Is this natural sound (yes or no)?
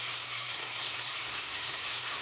no